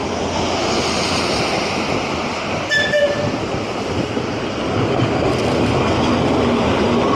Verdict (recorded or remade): recorded